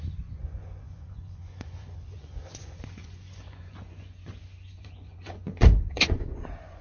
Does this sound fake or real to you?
fake